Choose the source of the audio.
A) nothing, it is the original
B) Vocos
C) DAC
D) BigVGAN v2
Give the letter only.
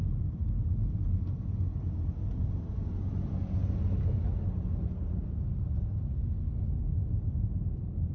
A